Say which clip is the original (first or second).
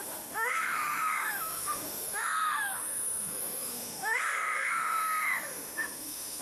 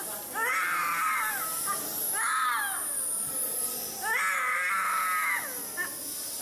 second